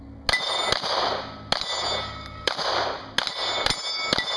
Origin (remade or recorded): recorded